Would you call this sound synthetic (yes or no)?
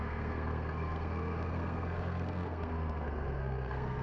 yes